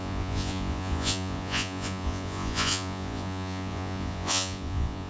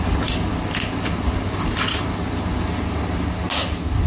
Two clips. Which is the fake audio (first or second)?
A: first